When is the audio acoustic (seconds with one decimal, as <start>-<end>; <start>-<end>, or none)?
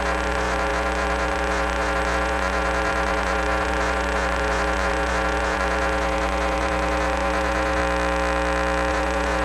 7.8-8.9